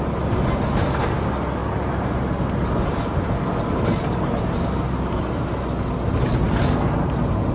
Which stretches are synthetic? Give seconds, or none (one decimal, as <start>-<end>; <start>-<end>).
none